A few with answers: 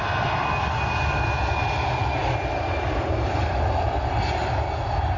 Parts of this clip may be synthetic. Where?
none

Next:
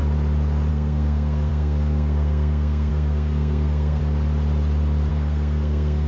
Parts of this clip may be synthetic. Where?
0.7-4.0 (codec, SNAC); 5.1-6.1

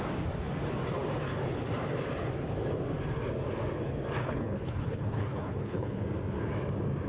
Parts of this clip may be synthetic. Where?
4.2-6.0 (codec, HILCodec)

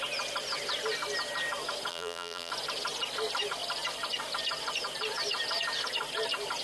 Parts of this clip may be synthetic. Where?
1.9-2.5 (vocoder, BigVGAN v2)

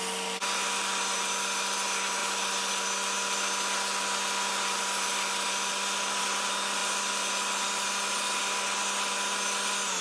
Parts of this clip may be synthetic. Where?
none

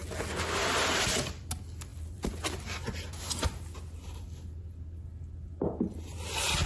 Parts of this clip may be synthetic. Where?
none

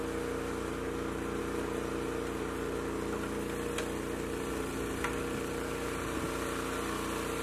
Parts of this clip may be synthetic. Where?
none

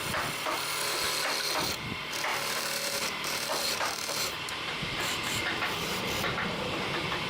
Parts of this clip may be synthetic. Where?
2.3-6.0 (vocoder, BigVGAN v2)